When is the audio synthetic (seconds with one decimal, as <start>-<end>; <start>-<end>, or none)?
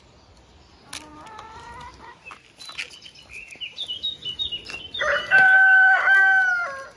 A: 5.2-6.0